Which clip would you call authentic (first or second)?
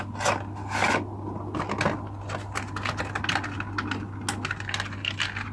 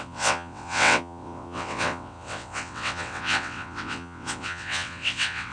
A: first